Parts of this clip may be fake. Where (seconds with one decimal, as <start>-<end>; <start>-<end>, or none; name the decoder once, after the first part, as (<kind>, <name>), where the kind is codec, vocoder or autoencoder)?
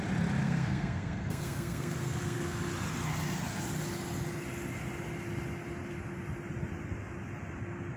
0.4-2.6 (codec, SNAC)